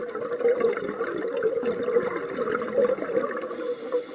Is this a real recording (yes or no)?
yes